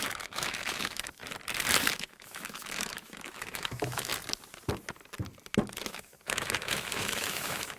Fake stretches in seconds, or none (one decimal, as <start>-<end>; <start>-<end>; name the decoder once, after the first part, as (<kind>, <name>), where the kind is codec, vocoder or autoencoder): 0.0-1.2 (autoencoder, DAC-VAE); 1.9-4.1; 5.9-7.8